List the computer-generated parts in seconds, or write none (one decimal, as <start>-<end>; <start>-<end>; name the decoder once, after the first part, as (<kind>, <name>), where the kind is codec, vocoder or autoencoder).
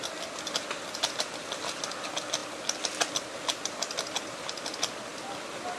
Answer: none